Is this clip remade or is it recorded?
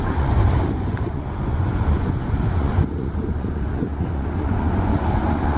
remade